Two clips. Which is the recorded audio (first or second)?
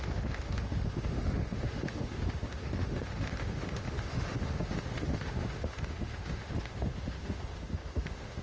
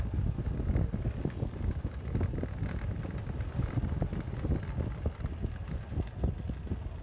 second